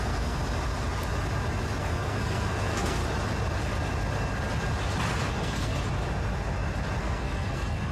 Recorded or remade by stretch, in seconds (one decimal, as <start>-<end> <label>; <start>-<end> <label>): 0.0-0.4 remade; 0.4-1.8 recorded; 1.8-3.0 remade; 3.0-5.3 recorded; 5.3-5.7 remade; 5.7-7.0 recorded; 7.0-7.9 remade